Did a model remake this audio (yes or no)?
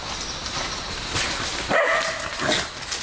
no